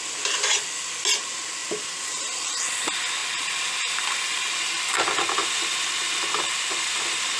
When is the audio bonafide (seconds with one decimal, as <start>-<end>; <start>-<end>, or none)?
0.0-5.4

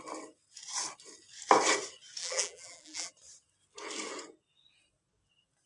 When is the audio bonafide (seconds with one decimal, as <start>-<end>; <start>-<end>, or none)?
0.0-2.2; 3.1-5.7

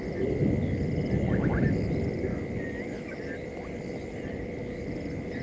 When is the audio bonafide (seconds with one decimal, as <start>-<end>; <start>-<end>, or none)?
2.3-4.1

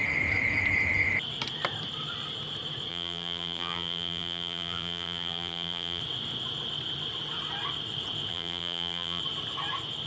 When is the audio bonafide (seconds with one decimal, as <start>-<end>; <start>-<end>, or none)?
0.0-2.9; 6.0-8.3; 9.2-10.1

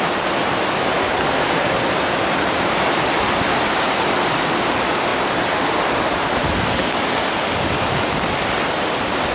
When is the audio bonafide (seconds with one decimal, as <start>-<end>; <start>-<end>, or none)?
5.1-6.4

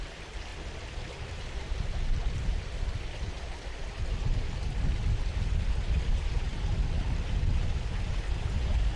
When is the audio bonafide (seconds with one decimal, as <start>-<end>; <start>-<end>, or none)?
0.5-1.1; 2.5-6.1; 6.5-7.5